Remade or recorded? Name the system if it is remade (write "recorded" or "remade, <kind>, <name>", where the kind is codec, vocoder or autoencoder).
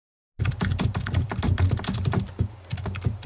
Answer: recorded